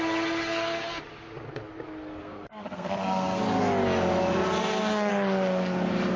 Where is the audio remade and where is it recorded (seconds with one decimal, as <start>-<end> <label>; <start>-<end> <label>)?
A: 0.0-2.2 recorded; 2.2-3.4 remade; 3.4-4.6 recorded; 4.6-5.1 remade; 5.1-6.2 recorded